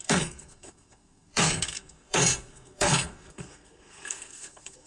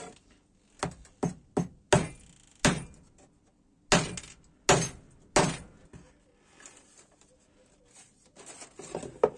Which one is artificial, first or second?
first